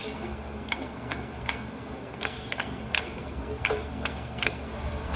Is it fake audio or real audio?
fake